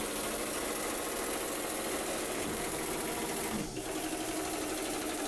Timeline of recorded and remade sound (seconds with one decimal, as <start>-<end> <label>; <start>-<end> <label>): 0.0-5.3 recorded